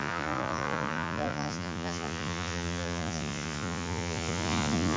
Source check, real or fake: fake